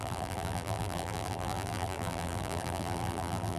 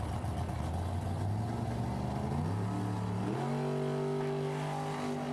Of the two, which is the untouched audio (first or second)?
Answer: second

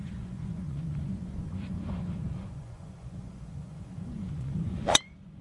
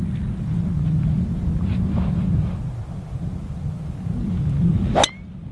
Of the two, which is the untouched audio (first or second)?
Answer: second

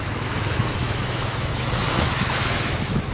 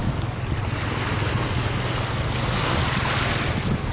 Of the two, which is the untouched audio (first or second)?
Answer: second